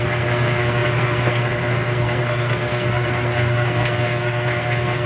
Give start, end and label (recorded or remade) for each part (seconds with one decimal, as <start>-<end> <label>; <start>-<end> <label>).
0.0-5.1 remade